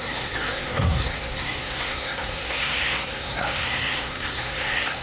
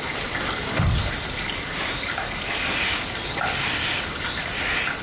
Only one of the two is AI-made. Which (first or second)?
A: first